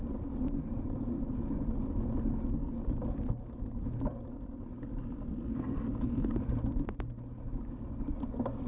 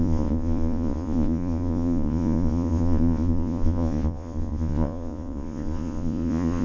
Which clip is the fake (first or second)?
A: second